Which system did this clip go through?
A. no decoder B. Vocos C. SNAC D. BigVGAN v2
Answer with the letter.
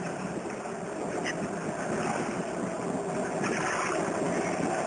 A